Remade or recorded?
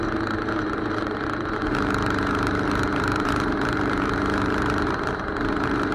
remade